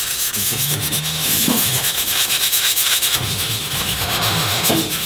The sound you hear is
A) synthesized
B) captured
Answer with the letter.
A